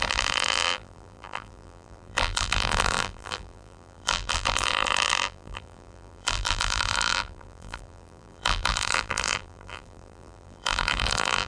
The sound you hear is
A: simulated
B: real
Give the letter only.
A